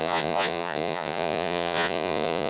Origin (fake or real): fake